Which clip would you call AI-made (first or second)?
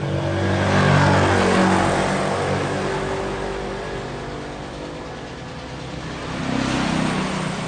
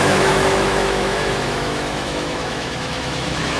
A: second